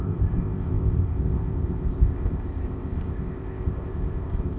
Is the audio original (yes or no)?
no